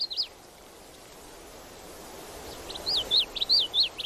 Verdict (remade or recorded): recorded